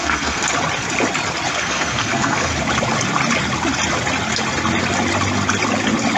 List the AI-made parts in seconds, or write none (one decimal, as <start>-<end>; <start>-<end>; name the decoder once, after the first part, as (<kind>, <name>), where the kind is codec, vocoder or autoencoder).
0.0-0.5 (codec, SNAC); 1.5-2.5